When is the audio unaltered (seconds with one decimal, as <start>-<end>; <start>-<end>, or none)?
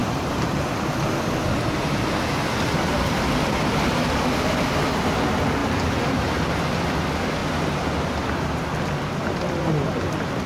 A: 0.9-10.5